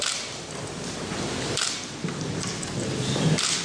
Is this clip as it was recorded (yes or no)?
yes